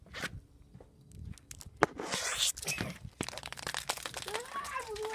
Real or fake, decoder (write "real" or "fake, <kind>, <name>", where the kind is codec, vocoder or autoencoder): real